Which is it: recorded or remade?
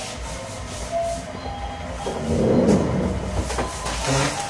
recorded